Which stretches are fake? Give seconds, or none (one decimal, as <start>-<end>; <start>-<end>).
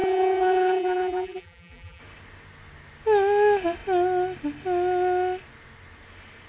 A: 0.0-2.0